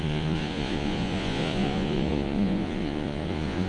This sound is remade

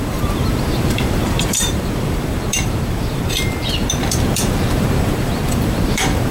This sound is remade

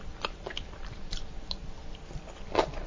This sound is recorded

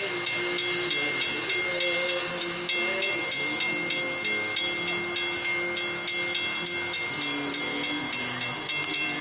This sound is recorded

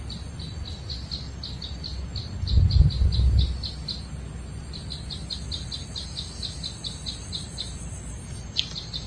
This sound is recorded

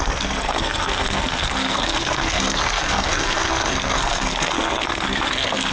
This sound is remade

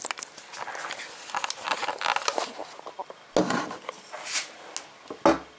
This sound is recorded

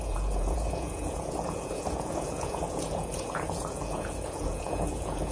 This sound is remade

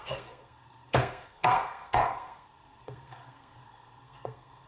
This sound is remade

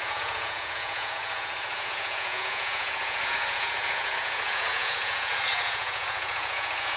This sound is remade